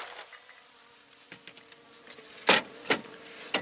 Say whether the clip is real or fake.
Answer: real